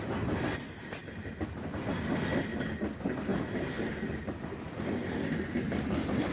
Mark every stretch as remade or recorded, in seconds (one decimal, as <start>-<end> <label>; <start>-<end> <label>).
0.0-6.3 recorded